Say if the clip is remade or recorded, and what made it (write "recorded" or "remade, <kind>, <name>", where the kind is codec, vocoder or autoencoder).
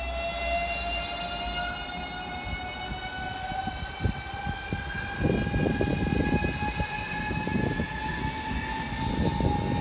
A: recorded